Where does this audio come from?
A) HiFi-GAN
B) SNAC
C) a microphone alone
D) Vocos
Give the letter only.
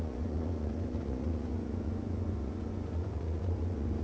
D